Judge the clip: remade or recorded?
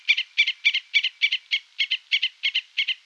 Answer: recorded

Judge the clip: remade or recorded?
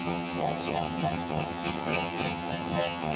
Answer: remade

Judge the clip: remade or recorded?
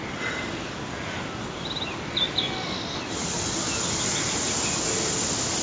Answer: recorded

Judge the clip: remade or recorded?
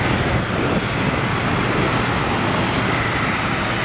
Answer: recorded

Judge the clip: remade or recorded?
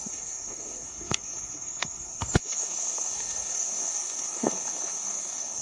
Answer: remade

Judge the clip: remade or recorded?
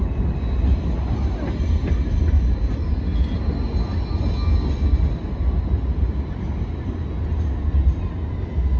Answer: recorded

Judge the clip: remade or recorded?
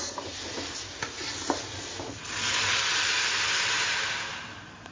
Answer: recorded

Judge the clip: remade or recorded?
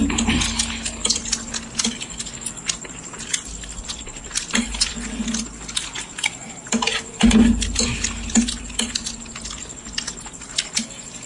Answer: recorded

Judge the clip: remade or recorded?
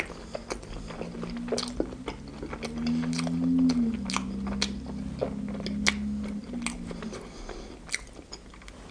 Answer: recorded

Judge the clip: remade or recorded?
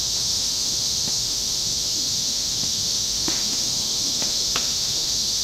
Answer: remade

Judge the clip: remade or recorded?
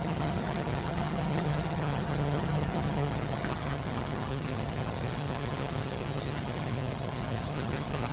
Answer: remade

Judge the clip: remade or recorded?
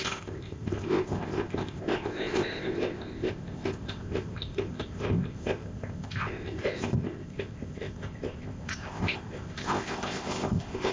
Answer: remade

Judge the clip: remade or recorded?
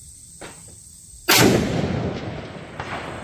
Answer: recorded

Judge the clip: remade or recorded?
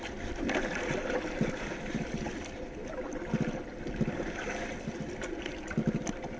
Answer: recorded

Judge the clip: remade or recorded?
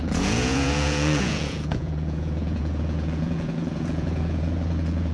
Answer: remade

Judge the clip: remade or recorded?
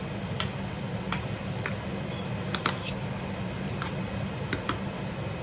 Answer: recorded